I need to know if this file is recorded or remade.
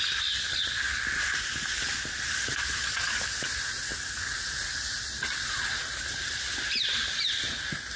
recorded